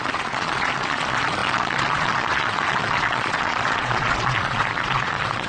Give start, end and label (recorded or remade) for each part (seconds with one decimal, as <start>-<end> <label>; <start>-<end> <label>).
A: 0.0-5.5 remade